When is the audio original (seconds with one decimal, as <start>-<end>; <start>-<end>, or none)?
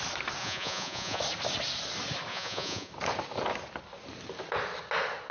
0.0-0.4; 1.2-2.3; 2.9-5.3